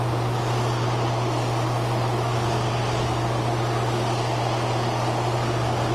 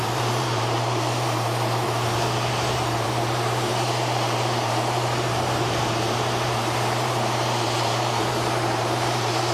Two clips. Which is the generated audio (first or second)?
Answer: second